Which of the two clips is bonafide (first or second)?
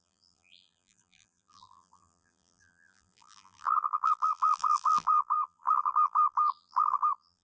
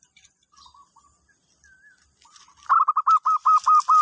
second